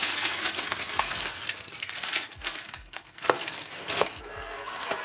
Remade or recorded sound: remade